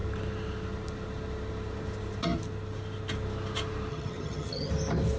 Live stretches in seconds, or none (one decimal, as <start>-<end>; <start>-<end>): 0.0-3.9; 4.7-5.2